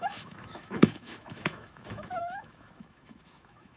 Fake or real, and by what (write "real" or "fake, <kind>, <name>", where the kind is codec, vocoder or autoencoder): fake, autoencoder, DAC-VAE